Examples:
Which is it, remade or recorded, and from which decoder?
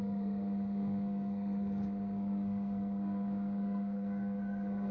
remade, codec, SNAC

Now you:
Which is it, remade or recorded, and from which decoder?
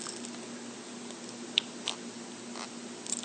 recorded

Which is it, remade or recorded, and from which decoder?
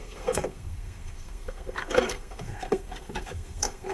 remade, codec, SNAC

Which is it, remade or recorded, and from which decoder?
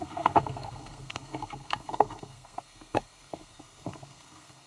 remade, codec, SNAC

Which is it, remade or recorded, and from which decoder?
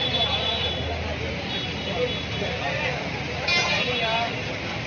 recorded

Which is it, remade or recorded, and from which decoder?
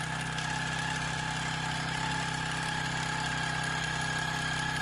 recorded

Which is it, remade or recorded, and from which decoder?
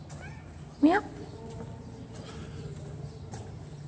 recorded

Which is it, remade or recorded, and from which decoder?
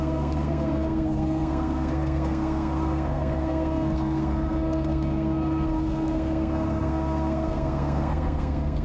remade, codec, SNAC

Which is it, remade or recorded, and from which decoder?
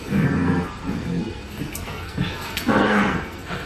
remade, codec, SNAC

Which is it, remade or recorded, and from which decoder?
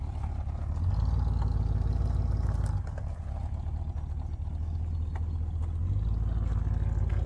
recorded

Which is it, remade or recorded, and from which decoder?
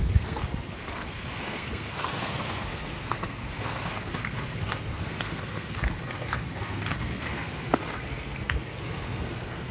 remade, codec, SNAC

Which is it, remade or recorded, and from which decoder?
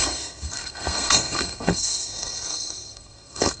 remade, codec, SNAC